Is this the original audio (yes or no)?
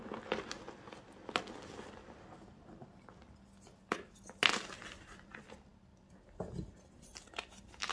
yes